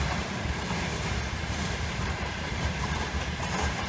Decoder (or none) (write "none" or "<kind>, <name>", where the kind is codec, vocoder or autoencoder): vocoder, BigVGAN v2